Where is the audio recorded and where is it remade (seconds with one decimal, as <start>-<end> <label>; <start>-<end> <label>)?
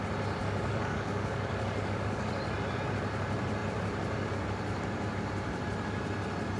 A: 0.0-0.4 recorded; 0.4-2.3 remade; 2.3-6.6 recorded